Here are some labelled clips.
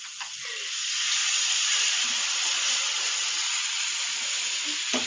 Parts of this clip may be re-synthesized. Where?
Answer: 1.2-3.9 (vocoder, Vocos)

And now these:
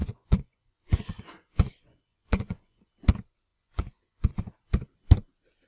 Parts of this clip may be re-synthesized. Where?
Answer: 0.0-2.9 (vocoder, Vocos); 3.5-4.3

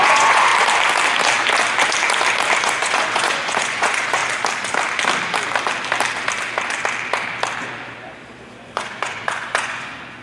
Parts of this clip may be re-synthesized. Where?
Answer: 0.0-0.5 (vocoder, Vocos); 2.6-4.2; 8.6-10.2

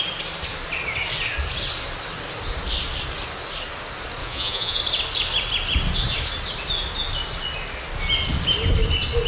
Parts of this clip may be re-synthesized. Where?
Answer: 4.2-4.8 (vocoder, Vocos)

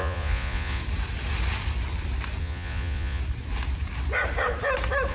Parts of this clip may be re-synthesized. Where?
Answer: 0.0-0.8 (vocoder, Vocos); 2.4-3.2

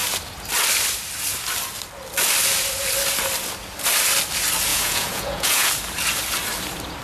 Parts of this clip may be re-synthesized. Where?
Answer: 4.7-5.7 (vocoder, Vocos)

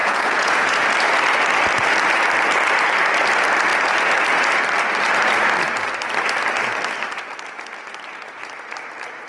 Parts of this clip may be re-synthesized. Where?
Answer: 0.0-0.8 (vocoder, Vocos)